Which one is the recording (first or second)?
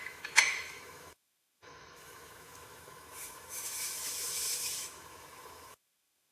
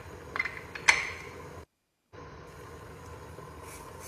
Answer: second